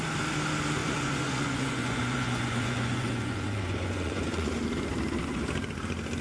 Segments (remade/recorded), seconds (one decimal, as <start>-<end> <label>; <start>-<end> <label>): 0.0-0.8 recorded; 0.8-4.5 remade; 4.5-6.2 recorded